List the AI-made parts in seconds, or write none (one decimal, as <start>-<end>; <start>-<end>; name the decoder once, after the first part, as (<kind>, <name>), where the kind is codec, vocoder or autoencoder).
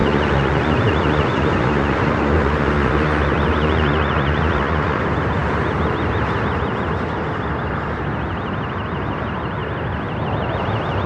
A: 0.0-5.0 (vocoder, Vocos)